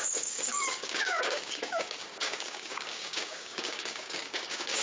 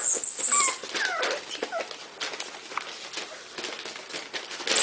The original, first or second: second